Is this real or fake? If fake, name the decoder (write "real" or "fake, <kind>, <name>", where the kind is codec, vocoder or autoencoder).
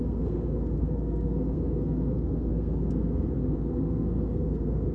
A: fake, codec, SNAC